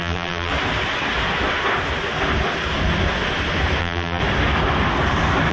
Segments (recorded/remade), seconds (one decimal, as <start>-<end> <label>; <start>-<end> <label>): 0.0-0.5 remade; 0.5-3.8 recorded; 3.8-4.2 remade; 4.2-5.5 recorded